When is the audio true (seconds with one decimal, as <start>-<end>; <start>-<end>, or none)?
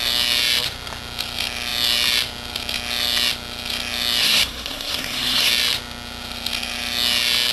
0.0-4.2; 5.5-7.5